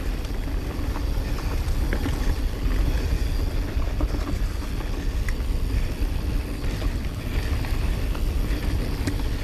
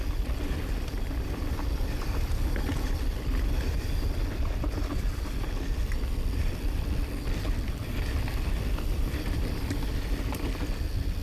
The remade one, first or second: second